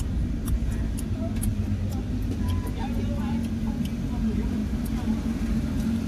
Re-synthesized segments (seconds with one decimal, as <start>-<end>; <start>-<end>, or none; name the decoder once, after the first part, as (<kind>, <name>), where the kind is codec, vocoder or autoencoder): none